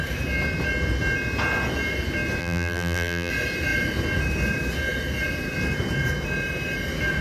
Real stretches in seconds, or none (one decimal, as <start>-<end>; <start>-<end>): 0.0-2.4; 3.3-7.2